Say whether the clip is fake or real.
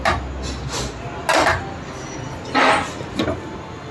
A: real